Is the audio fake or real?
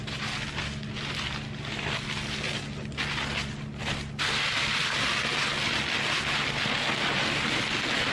real